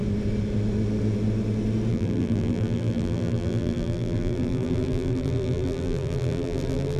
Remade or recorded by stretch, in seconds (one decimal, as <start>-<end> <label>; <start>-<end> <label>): 0.0-1.9 recorded; 1.9-7.0 remade